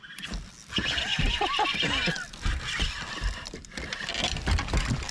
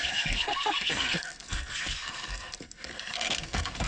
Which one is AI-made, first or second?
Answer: second